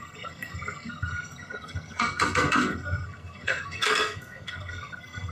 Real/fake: fake